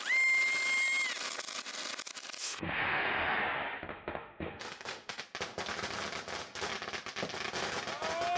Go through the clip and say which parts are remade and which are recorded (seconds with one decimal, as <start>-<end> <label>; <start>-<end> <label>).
0.0-2.4 recorded; 2.4-3.4 remade; 3.4-3.9 recorded; 3.9-5.2 remade; 5.2-8.4 recorded